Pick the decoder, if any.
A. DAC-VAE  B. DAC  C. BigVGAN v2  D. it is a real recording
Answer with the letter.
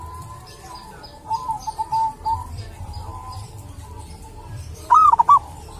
C